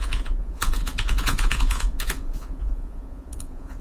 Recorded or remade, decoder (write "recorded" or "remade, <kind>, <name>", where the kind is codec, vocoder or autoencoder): remade, vocoder, Vocos